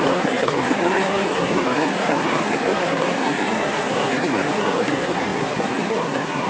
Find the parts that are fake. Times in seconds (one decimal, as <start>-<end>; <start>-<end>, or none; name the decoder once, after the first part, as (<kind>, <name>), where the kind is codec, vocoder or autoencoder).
0.0-6.5 (codec, SNAC)